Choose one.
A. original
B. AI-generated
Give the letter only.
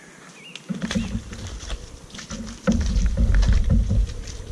A